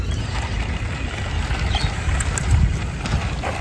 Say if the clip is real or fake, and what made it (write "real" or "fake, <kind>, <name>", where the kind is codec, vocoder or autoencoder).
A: real